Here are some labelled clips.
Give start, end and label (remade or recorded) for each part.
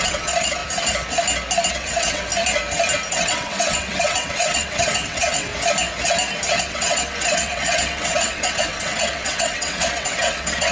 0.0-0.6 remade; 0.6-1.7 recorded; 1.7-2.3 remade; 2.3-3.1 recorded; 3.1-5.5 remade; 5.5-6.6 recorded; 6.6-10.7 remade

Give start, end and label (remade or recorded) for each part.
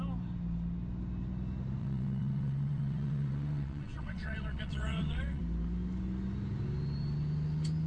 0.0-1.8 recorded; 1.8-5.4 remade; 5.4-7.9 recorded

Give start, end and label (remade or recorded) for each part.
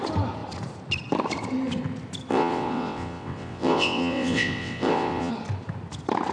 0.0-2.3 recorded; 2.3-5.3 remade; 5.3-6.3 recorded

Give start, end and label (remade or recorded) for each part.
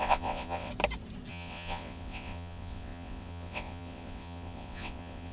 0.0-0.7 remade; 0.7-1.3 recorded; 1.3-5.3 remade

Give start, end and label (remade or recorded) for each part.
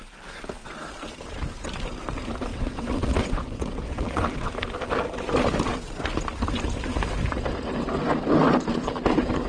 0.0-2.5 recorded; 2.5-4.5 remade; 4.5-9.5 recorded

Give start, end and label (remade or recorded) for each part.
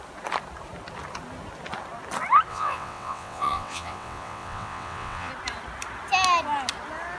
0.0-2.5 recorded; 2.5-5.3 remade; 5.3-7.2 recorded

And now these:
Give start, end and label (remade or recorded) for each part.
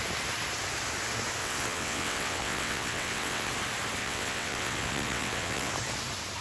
0.0-1.4 recorded; 1.4-3.5 remade; 3.5-4.0 recorded; 4.0-5.7 remade; 5.7-6.4 recorded